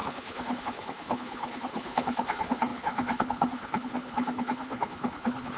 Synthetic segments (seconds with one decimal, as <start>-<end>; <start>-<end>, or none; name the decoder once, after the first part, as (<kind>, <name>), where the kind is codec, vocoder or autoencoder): 0.0-5.6 (codec, HILCodec)